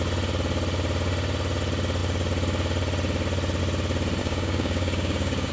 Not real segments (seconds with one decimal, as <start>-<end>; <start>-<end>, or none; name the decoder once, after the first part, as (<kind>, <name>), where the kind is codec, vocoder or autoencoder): 4.2-5.5 (codec, DAC)